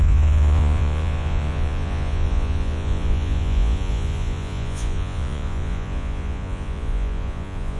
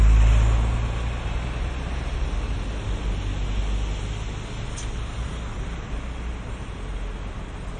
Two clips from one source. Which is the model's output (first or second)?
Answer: first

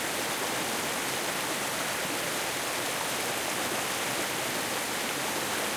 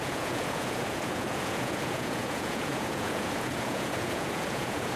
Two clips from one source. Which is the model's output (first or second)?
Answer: second